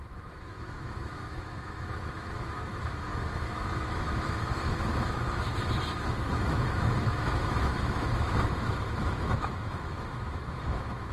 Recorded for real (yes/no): no